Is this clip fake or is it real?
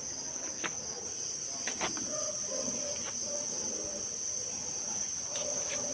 real